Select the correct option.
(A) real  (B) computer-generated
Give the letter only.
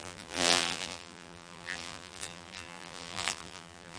B